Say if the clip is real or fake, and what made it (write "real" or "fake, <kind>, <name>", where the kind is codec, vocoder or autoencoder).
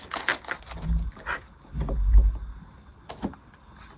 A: real